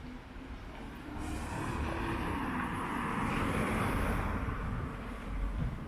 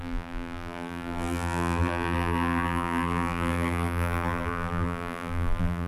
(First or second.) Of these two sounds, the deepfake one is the second